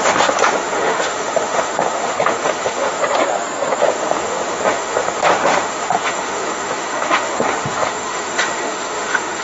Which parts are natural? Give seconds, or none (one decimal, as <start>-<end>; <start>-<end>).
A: 3.0-3.8